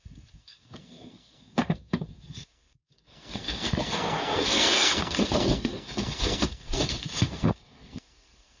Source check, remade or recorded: remade